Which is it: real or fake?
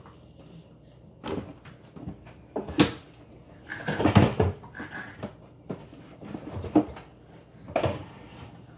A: real